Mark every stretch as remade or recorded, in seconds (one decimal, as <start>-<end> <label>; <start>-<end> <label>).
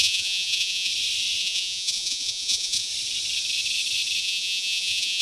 0.0-0.9 remade; 0.9-1.4 recorded; 1.4-2.9 remade; 2.9-4.2 recorded; 4.2-5.2 remade